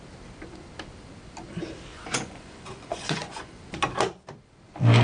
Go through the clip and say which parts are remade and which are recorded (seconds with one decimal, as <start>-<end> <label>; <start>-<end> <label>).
0.0-1.9 recorded; 1.9-3.6 remade; 3.6-5.0 recorded